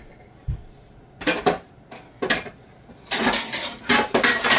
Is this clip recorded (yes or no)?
yes